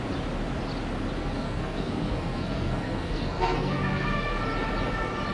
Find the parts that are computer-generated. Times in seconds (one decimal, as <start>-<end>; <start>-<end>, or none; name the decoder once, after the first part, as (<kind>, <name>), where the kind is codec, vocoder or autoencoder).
1.2-4.4 (codec, SNAC)